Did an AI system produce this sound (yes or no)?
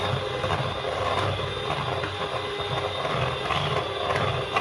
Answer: no